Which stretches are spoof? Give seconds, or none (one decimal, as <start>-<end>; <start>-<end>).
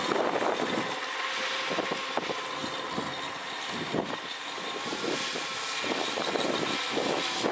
2.6-7.1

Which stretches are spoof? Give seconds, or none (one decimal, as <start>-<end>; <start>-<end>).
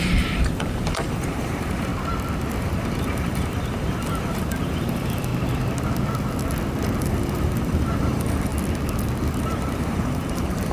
0.0-1.9; 2.6-5.3; 7.0-8.5; 9.4-10.7